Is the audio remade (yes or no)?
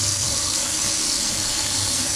yes